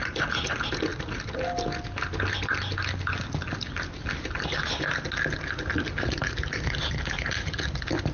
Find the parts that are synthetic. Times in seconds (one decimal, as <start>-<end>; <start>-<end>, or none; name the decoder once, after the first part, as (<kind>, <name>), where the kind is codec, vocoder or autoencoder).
none